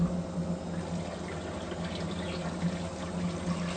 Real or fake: real